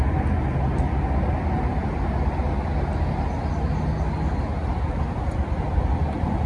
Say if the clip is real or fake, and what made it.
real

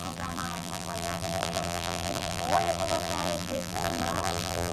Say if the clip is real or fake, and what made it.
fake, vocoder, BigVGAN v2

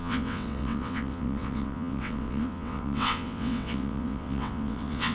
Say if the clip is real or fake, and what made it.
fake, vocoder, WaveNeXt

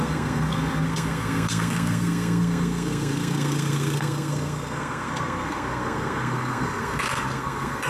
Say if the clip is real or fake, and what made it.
fake, codec, SNAC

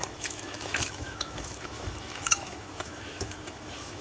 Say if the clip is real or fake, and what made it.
fake, autoencoder, DAC-VAE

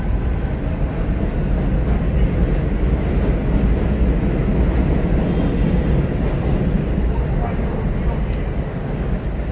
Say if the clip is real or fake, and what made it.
real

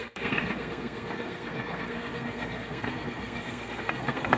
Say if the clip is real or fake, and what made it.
fake, codec, SNAC